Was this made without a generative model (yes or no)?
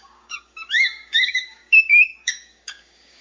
no